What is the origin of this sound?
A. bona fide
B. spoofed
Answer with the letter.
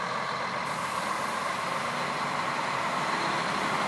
A